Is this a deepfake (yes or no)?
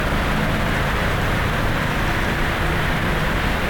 no